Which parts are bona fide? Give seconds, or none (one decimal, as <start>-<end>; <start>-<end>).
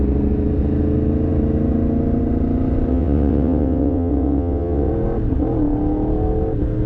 0.0-2.9; 4.9-6.9